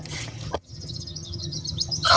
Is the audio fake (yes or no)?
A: yes